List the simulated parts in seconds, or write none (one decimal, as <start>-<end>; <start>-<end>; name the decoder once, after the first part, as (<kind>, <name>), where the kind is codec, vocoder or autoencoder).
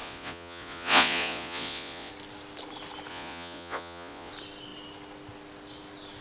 0.0-2.1 (vocoder, Vocos); 3.1-4.3